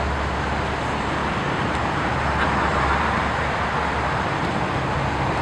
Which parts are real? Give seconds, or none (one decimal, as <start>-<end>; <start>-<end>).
0.0-1.2; 2.2-2.7; 3.7-5.4

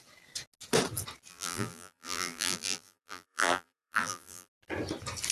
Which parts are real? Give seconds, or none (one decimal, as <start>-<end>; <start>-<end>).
0.0-1.3; 4.5-5.3

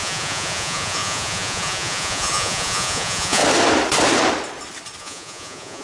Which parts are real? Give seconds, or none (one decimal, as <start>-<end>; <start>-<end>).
3.4-5.0